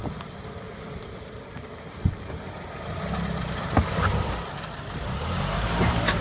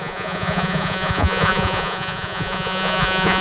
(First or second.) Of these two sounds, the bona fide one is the first